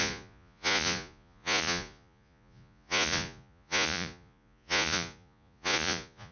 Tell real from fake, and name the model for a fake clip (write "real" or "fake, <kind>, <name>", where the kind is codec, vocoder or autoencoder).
fake, vocoder, Vocos